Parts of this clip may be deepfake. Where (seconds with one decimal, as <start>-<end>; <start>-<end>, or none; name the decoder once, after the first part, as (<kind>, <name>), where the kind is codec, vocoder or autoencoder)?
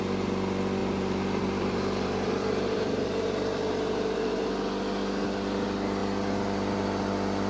0.8-4.5 (vocoder, BigVGAN v2)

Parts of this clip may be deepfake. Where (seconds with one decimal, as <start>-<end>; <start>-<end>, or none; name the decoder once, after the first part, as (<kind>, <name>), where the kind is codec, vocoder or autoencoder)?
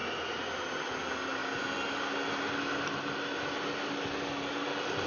0.0-0.6 (vocoder, BigVGAN v2)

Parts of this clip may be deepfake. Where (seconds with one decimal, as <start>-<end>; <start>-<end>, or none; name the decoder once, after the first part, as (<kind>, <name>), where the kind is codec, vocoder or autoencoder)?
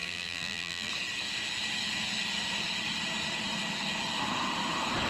0.0-0.9 (vocoder, BigVGAN v2)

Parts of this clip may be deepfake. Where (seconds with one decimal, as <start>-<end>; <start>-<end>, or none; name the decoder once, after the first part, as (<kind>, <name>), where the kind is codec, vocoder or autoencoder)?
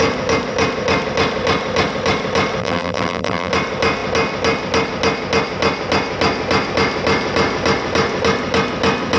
2.6-3.5 (vocoder, BigVGAN v2)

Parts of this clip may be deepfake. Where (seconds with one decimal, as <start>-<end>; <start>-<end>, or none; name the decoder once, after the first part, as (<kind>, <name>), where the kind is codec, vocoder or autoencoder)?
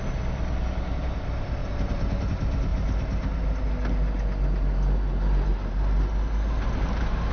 none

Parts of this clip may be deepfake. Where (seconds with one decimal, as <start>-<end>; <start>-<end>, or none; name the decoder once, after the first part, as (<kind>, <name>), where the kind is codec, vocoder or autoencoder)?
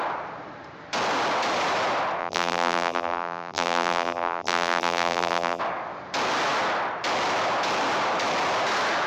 2.2-5.6 (vocoder, BigVGAN v2)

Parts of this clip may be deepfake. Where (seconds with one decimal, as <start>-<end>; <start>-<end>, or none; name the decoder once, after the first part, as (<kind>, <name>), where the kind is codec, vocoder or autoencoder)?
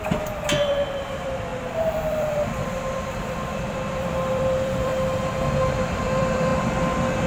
0.0-4.9 (vocoder, BigVGAN v2); 5.8-7.3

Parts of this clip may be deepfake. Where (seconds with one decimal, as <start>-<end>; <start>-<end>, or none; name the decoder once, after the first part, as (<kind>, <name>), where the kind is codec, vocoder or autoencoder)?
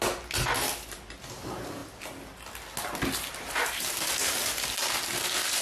none